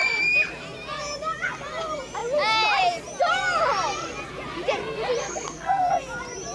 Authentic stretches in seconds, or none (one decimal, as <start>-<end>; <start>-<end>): 0.0-5.2; 5.9-6.5